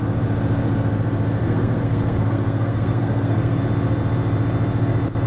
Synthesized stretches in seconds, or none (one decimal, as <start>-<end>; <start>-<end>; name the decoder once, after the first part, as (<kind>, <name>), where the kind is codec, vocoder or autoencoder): 1.4-3.6 (codec, SNAC)